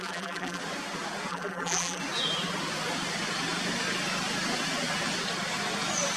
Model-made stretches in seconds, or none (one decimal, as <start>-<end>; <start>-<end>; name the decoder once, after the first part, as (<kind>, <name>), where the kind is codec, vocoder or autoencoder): 0.0-0.6 (vocoder, BigVGAN v2); 1.3-2.0